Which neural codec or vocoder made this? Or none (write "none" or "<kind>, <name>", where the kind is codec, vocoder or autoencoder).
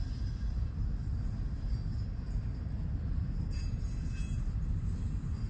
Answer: none